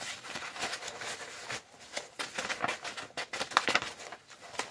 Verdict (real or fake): real